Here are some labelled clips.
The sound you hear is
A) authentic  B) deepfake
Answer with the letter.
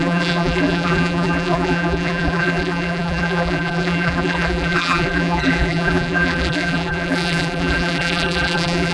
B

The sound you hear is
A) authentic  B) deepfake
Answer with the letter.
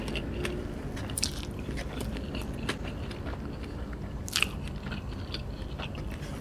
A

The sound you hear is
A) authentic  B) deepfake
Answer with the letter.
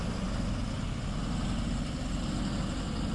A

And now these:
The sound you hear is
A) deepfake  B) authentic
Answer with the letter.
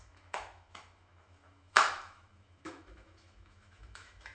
A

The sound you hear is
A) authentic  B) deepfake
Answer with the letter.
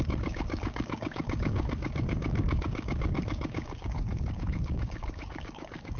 B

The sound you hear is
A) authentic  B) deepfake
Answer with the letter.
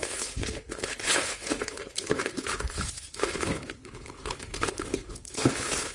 B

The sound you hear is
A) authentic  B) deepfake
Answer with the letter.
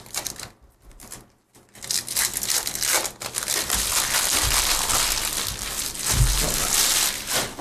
A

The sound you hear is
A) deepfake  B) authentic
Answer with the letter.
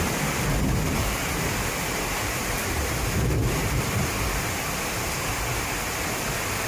B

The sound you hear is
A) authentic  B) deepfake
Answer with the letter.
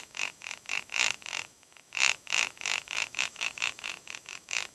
B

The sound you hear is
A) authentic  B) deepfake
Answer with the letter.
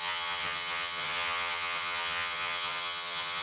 B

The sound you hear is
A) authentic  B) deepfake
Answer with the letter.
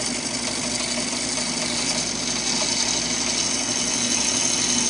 A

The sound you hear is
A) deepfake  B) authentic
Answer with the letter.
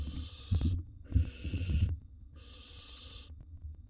A